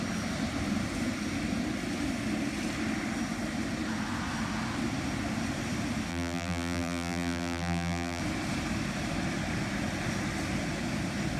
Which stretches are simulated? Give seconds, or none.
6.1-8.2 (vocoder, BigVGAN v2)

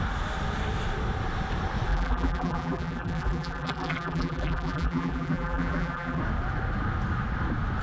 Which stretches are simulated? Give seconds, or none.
1.9-6.2 (vocoder, BigVGAN v2)

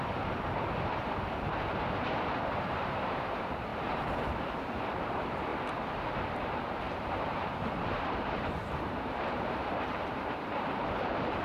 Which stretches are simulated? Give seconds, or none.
0.0-5.5 (vocoder, BigVGAN v2); 6.2-11.4

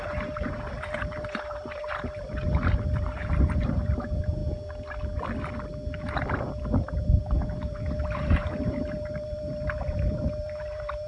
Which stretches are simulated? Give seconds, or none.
0.0-4.4 (vocoder, BigVGAN v2); 7.2-11.1